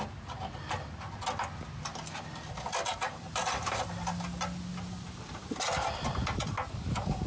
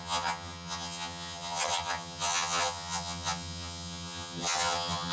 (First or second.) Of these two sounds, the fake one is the second